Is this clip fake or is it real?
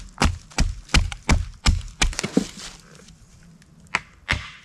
real